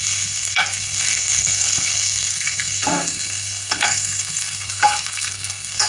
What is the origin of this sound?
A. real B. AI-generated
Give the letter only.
B